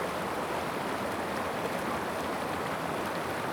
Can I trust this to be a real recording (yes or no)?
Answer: yes